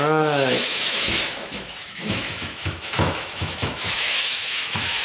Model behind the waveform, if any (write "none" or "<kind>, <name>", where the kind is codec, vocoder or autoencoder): autoencoder, DAC-VAE